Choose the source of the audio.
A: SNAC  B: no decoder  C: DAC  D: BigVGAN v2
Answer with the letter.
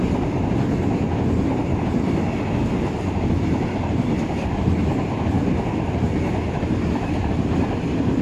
B